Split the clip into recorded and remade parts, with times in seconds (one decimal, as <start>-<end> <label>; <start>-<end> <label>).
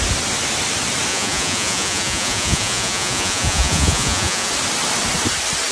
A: 0.0-1.1 recorded; 1.1-4.5 remade; 4.5-5.7 recorded